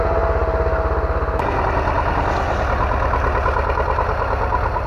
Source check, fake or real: real